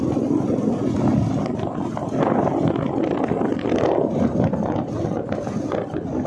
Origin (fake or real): real